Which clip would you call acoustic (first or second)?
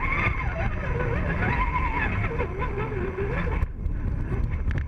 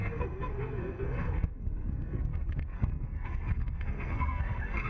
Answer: first